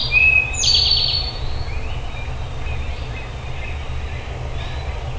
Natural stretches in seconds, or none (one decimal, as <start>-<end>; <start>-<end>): 0.0-5.2

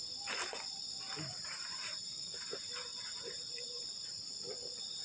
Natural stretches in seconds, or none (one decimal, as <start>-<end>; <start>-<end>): 0.0-1.1; 4.1-5.0

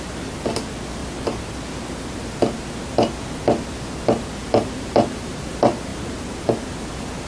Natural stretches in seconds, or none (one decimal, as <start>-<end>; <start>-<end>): 0.0-4.4; 5.5-7.3